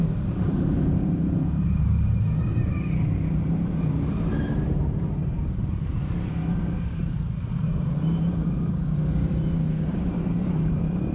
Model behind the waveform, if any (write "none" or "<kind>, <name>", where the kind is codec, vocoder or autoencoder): vocoder, BigVGAN v2